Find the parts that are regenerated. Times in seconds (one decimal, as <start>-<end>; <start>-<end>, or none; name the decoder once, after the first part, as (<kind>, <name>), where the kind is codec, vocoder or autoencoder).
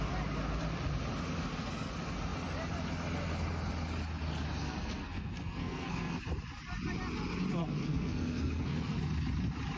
1.4-1.9 (codec, SNAC); 4.6-6.2; 7.6-9.0